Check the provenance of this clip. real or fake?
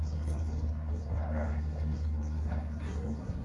fake